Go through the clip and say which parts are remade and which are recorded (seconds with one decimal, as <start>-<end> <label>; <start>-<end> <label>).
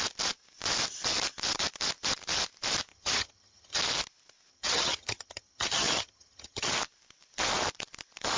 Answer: 0.0-2.9 recorded; 2.9-3.8 remade; 3.8-4.5 recorded; 4.5-6.7 remade; 6.7-8.4 recorded